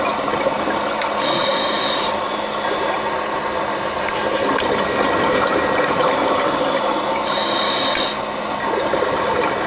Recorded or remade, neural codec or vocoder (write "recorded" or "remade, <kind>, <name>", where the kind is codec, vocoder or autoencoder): recorded